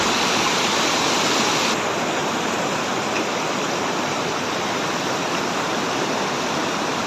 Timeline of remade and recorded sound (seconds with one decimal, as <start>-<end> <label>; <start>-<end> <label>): 0.0-7.1 recorded